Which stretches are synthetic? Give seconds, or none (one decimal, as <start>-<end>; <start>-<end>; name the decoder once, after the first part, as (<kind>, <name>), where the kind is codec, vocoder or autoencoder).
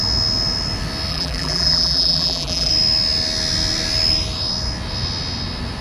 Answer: 1.1-2.7 (vocoder, BigVGAN v2)